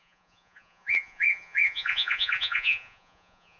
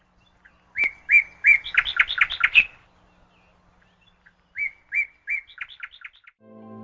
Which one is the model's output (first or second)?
first